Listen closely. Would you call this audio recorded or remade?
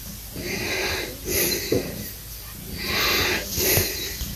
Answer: recorded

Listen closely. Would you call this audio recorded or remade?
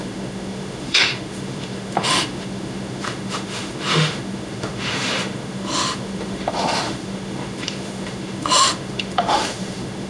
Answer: remade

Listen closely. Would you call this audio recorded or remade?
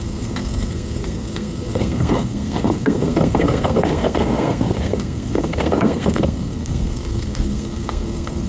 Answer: remade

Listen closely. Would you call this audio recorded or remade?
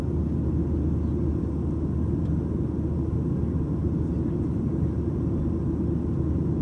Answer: recorded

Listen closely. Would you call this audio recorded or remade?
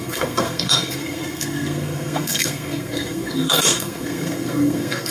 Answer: remade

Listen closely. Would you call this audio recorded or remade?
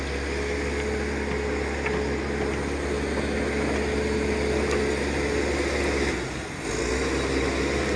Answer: recorded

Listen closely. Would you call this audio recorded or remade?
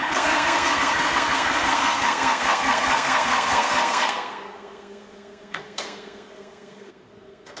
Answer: remade